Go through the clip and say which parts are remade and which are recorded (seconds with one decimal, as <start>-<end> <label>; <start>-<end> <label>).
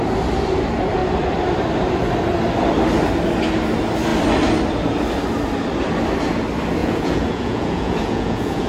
0.0-6.8 recorded; 6.8-8.7 remade